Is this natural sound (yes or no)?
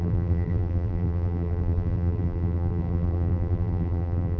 no